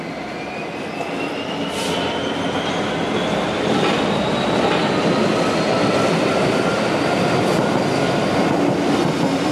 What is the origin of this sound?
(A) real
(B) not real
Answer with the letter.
A